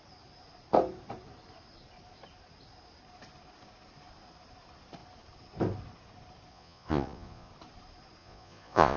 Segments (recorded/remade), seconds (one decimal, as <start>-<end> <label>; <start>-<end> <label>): 0.0-6.5 recorded; 6.5-7.5 remade; 7.5-8.2 recorded; 8.2-9.0 remade